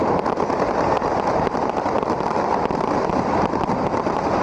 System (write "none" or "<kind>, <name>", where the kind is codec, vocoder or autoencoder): none